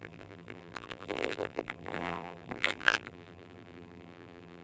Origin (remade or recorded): remade